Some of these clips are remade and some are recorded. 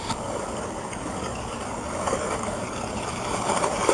remade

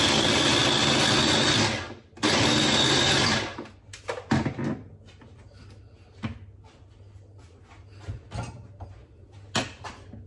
recorded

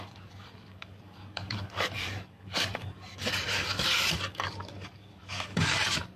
remade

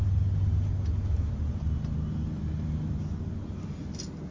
recorded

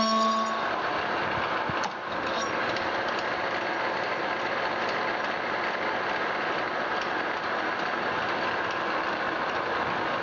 recorded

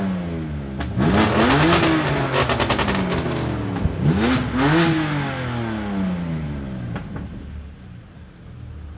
recorded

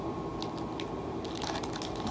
recorded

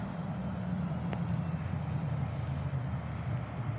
recorded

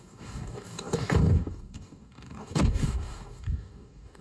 remade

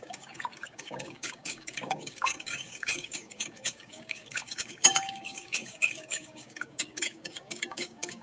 remade